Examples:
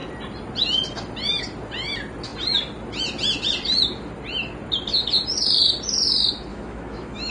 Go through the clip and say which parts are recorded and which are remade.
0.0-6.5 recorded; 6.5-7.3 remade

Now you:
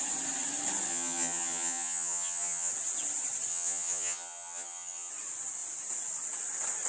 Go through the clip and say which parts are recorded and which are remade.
0.0-0.9 recorded; 0.9-2.7 remade; 2.7-3.5 recorded; 3.5-5.1 remade; 5.1-6.9 recorded

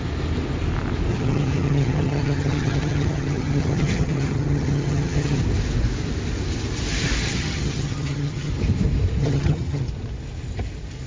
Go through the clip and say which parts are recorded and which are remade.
0.0-1.1 recorded; 1.1-5.4 remade; 5.4-7.2 recorded; 7.2-8.5 remade; 8.5-9.2 recorded; 9.2-9.9 remade; 9.9-11.1 recorded

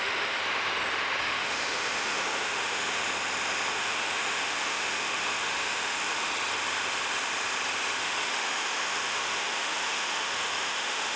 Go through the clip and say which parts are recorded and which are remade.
0.0-0.4 remade; 0.4-1.2 recorded; 1.2-3.0 remade; 3.0-3.7 recorded; 3.7-6.3 remade; 6.3-8.0 recorded; 8.0-11.2 remade

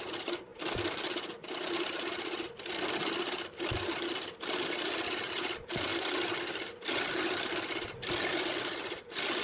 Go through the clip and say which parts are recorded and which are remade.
0.0-9.4 recorded

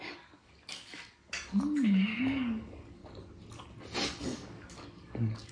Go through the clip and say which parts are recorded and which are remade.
0.0-3.0 remade; 3.0-4.2 recorded; 4.2-5.5 remade

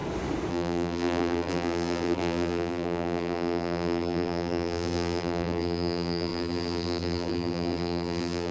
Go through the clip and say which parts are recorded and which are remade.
0.0-0.5 recorded; 0.5-8.5 remade

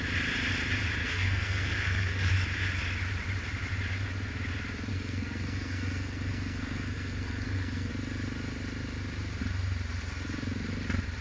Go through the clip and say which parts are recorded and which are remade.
0.0-1.0 recorded; 1.0-2.3 remade; 2.3-4.9 recorded; 4.9-7.9 remade; 7.9-11.2 recorded